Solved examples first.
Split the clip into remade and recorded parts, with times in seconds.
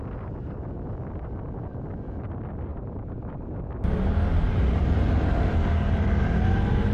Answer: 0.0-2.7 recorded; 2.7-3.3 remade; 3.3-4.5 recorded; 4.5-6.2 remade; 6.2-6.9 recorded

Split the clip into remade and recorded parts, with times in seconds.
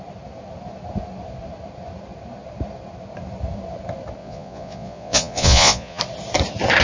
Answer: 0.0-4.2 recorded; 4.2-6.0 remade; 6.0-6.8 recorded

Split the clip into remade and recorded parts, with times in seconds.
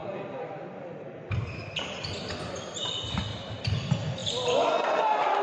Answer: 0.0-5.4 recorded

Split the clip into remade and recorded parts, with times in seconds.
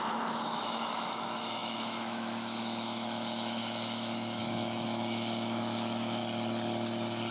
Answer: 0.0-6.2 remade; 6.2-7.3 recorded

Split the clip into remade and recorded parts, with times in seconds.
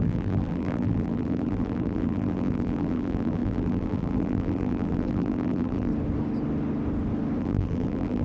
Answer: 0.0-5.9 remade; 5.9-7.4 recorded; 7.4-8.2 remade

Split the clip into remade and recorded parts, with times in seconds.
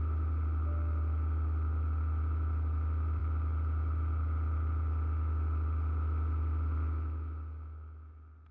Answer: 0.0-8.5 recorded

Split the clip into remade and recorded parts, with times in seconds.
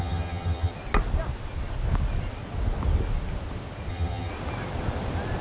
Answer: 0.0-0.7 remade; 0.7-3.9 recorded; 3.9-4.3 remade; 4.3-5.4 recorded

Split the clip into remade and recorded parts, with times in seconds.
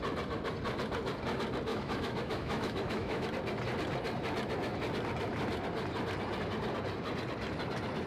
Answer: 0.0-1.7 recorded; 1.7-3.3 remade; 3.3-8.1 recorded